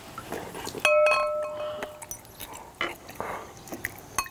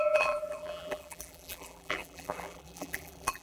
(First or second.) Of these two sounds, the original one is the first